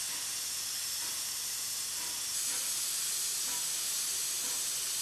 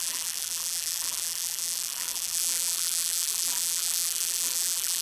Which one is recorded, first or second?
first